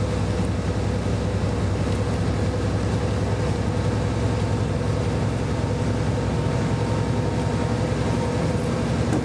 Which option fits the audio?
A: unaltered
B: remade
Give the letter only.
A